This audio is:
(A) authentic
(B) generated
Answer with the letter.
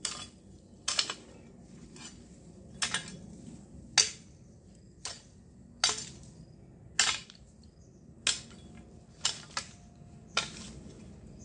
A